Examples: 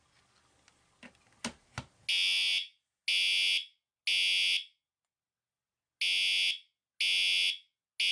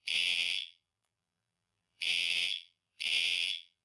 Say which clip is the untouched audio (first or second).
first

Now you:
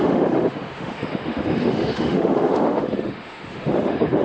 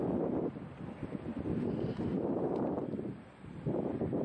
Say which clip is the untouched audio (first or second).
second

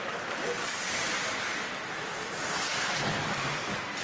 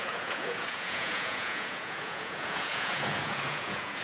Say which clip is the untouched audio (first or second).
first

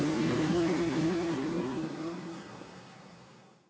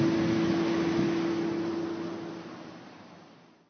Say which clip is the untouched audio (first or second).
second